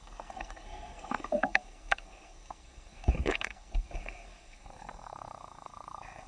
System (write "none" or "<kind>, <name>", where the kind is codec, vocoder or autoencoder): codec, SNAC